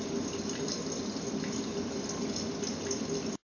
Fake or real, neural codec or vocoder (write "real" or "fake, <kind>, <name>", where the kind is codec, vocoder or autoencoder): real